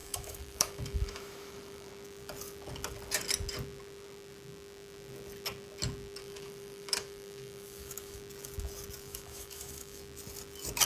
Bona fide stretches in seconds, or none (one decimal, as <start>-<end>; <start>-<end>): 1.9-6.2; 8.2-9.1; 10.0-10.9